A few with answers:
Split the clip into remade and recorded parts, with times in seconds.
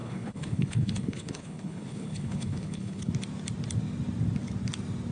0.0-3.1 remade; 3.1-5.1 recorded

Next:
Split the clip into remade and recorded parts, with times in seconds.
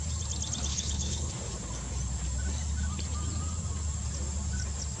0.0-0.7 recorded; 0.7-1.3 remade; 1.3-5.0 recorded